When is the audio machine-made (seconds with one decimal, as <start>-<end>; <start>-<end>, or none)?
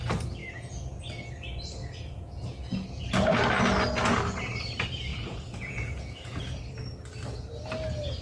0.4-1.0; 1.8-3.0; 5.1-6.6